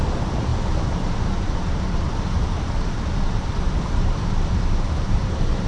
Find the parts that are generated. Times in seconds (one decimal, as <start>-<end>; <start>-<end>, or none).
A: 0.0-5.7